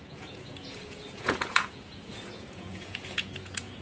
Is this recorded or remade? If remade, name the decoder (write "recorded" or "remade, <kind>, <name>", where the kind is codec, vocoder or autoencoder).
remade, vocoder, Vocos